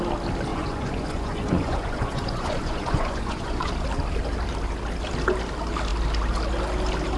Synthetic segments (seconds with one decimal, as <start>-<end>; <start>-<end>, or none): 0.5-3.7